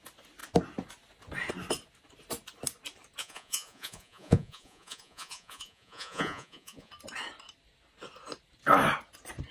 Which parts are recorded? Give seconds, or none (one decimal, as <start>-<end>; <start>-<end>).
0.0-3.2; 6.9-9.5